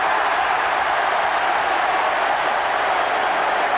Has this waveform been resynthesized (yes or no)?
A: no